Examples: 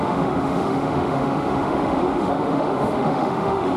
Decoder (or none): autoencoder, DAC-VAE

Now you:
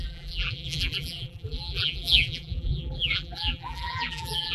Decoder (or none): vocoder, BigVGAN v2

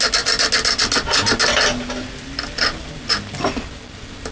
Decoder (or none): none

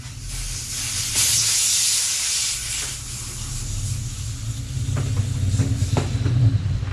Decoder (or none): none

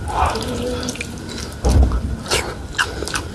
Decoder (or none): none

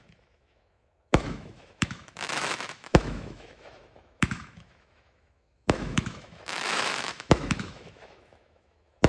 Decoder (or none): autoencoder, DAC-VAE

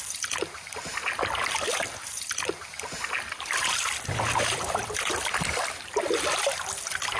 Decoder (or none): vocoder, BigVGAN v2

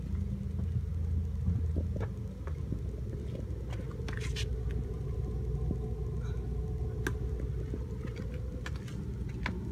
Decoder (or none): none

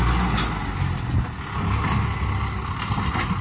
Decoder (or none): none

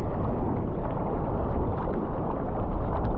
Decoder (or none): none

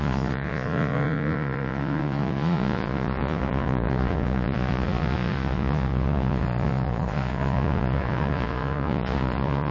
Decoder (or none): vocoder, Vocos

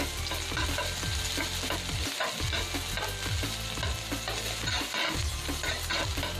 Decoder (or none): none